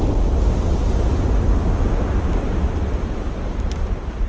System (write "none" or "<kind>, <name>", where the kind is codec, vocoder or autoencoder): none